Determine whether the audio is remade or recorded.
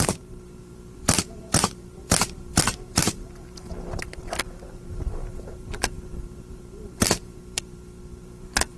remade